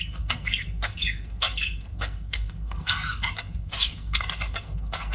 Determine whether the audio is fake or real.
fake